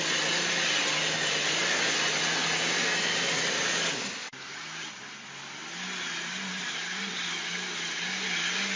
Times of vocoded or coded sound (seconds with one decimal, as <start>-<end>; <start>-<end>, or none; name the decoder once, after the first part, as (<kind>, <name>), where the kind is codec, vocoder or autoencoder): 6.5-7.1 (vocoder, BigVGAN v2)